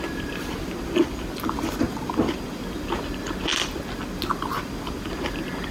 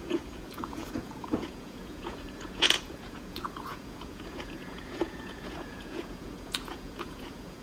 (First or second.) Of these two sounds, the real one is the first